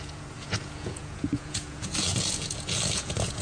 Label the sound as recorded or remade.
remade